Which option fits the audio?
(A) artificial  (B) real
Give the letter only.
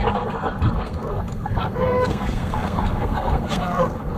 A